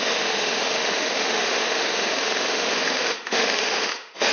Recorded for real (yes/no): no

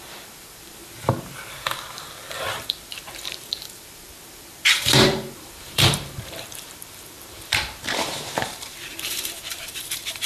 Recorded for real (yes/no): no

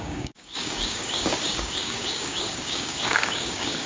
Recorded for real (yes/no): no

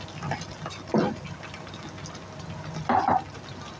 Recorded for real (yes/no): yes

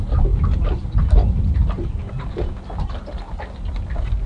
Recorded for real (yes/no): yes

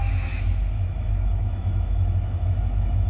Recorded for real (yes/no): no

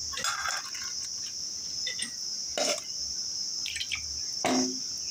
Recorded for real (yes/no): yes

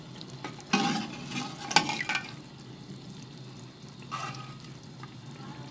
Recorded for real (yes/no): yes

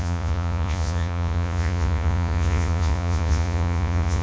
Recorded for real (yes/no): no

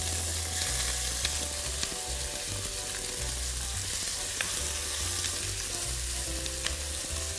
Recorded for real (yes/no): yes